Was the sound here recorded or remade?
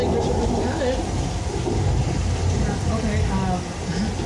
recorded